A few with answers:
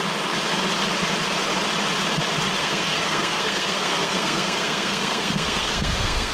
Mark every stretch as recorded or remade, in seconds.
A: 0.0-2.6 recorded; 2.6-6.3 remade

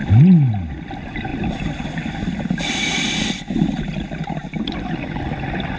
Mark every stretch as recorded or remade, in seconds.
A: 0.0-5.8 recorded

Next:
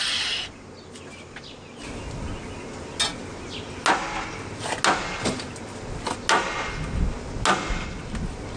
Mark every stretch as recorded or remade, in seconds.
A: 0.0-8.6 recorded

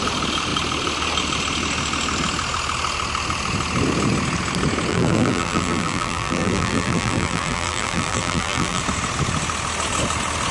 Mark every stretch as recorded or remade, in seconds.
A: 0.0-4.9 recorded; 4.9-8.8 remade; 8.8-10.5 recorded

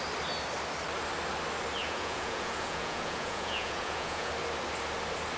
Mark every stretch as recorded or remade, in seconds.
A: 0.0-1.8 recorded; 1.8-4.3 remade; 4.3-5.4 recorded

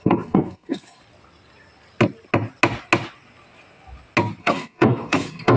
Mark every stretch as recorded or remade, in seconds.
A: 0.0-1.0 remade; 1.0-4.4 recorded; 4.4-5.6 remade